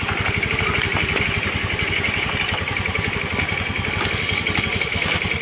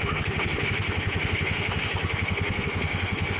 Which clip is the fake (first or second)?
second